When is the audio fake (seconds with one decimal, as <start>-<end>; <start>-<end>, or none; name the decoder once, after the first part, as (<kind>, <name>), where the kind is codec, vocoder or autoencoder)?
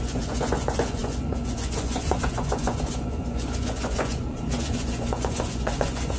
0.0-6.2 (vocoder, Vocos)